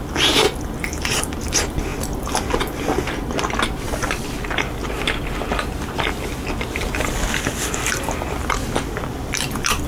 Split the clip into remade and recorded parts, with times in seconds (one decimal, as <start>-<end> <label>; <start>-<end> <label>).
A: 0.0-9.9 recorded